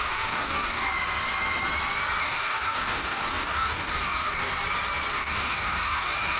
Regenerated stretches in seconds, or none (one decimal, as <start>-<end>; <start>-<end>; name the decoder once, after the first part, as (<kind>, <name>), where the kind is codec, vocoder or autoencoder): 0.0-0.9 (codec, DAC); 2.2-4.5; 5.1-6.4